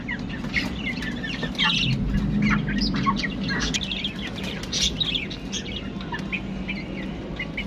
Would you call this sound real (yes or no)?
yes